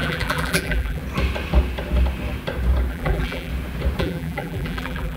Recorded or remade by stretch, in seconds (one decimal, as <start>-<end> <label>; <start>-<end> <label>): 0.0-1.0 remade; 1.0-2.9 recorded; 2.9-3.5 remade; 3.5-4.0 recorded; 4.0-5.2 remade

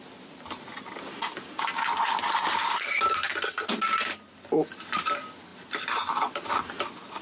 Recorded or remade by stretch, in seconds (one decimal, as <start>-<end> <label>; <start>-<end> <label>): 0.0-7.2 recorded